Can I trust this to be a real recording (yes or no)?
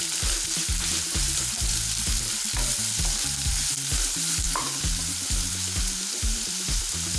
no